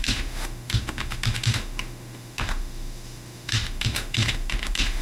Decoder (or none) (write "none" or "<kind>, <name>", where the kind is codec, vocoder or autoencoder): autoencoder, DAC-VAE